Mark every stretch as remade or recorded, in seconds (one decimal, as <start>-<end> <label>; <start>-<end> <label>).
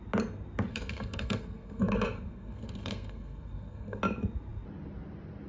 0.0-0.7 recorded; 0.7-4.0 remade; 4.0-5.5 recorded